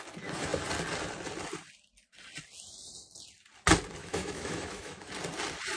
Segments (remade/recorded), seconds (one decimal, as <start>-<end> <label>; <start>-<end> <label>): 0.0-4.0 recorded; 4.0-5.1 remade; 5.1-5.8 recorded